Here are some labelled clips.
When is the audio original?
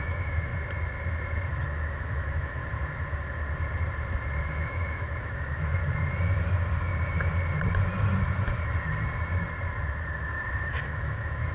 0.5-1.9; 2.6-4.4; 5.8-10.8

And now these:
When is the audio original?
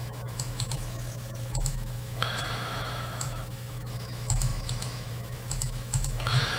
none